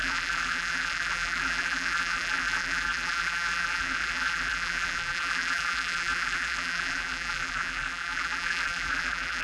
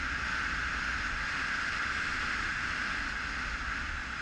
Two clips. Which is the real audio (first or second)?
second